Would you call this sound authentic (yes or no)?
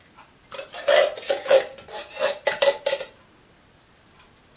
yes